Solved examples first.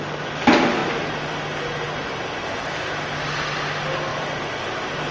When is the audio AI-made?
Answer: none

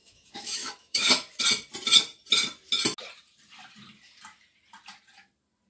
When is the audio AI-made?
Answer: 0.0-1.4 (autoencoder, DAC-VAE)

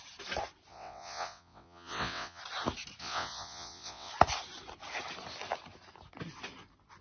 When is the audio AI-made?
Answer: 0.7-2.4 (vocoder, WaveNeXt); 3.0-4.1